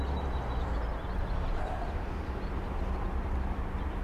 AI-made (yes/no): no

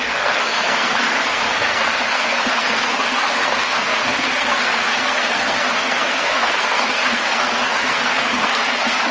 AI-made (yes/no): yes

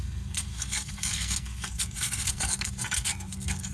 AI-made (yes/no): yes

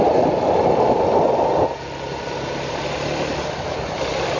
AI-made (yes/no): no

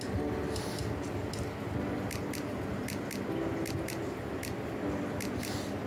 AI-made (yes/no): no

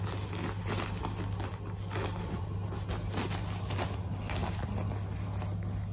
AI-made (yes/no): no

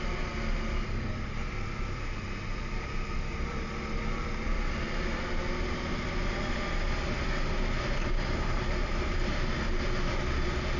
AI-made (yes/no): no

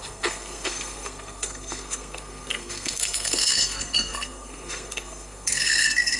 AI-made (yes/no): yes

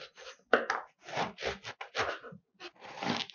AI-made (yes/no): no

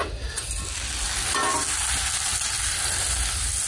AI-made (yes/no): no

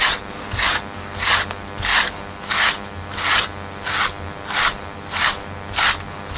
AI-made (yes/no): no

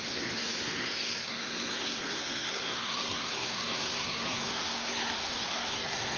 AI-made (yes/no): yes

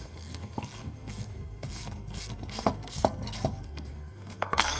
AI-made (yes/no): yes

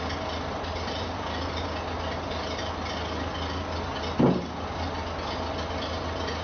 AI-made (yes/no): no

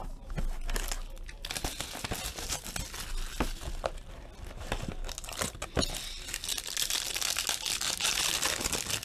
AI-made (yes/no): no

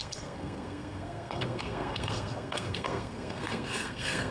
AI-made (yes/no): yes